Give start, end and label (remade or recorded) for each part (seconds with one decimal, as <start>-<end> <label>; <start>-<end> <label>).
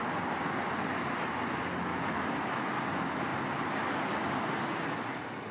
0.0-1.9 recorded; 1.9-2.7 remade; 2.7-5.5 recorded